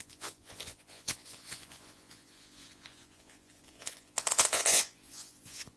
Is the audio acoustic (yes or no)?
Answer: no